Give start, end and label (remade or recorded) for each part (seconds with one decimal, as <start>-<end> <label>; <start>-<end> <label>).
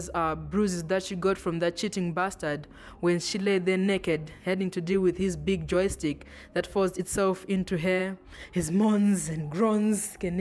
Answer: 0.0-3.3 recorded; 3.3-7.0 remade; 7.0-10.4 recorded